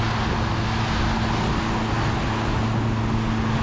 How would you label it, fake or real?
real